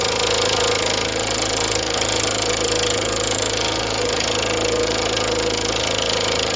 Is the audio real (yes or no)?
yes